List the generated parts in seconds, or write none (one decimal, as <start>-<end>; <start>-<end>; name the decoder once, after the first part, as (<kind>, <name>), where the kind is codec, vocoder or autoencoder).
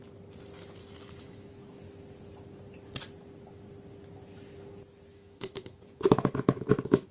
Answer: 0.8-1.5 (autoencoder, DAC-VAE); 5.1-7.1